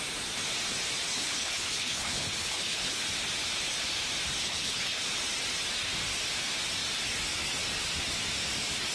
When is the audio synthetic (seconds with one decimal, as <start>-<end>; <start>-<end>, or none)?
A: 1.1-3.0; 4.4-5.0